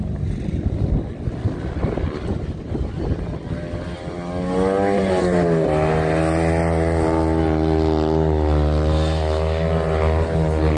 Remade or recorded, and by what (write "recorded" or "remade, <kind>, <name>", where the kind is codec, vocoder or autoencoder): recorded